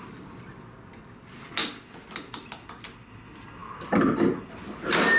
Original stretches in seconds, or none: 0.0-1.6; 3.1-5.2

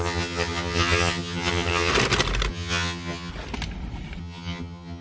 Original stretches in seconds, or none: 1.9-2.5; 3.3-4.2